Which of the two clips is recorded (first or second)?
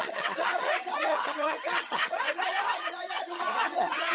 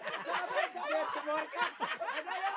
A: second